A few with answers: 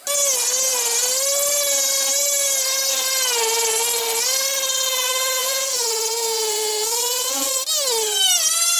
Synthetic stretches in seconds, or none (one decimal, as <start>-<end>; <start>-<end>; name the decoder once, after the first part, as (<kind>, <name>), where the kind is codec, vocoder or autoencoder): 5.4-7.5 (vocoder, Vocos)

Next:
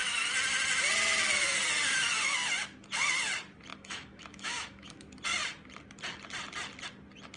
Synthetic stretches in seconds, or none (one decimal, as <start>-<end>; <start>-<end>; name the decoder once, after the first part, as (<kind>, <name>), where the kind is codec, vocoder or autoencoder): 3.7-5.1 (autoencoder, DAC-VAE)

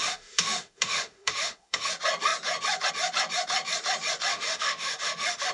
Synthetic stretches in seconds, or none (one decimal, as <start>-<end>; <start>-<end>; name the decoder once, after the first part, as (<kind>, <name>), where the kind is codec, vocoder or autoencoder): 0.0-1.9 (autoencoder, DAC-VAE); 4.3-5.5

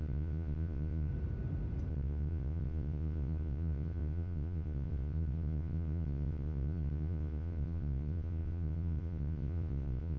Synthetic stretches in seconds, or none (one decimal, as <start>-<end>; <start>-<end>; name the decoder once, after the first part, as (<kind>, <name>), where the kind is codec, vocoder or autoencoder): 0.0-1.1 (vocoder, Vocos); 1.9-10.2